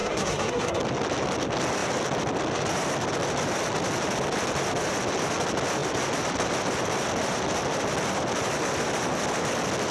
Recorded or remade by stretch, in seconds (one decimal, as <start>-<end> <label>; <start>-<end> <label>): 0.0-0.8 remade; 0.8-9.9 recorded